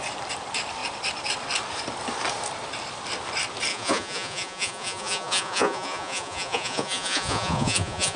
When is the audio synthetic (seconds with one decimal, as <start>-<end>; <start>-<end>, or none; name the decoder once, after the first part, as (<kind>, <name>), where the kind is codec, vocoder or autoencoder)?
3.7-8.2 (vocoder, Vocos)